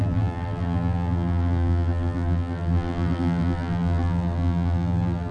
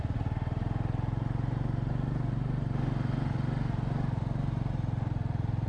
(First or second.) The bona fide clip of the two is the second